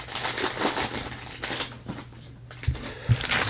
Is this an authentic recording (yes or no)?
yes